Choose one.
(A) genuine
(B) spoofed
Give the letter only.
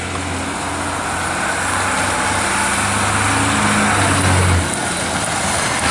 A